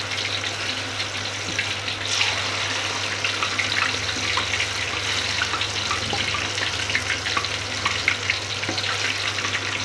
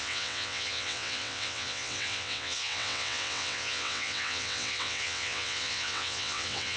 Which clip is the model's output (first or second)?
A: second